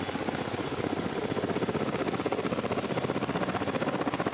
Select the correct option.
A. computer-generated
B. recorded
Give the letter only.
B